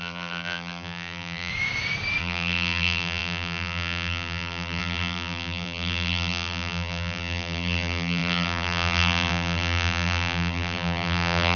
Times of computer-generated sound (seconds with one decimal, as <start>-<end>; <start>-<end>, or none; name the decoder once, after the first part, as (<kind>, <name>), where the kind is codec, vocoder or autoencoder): 0.0-1.5 (vocoder, BigVGAN v2); 2.2-11.6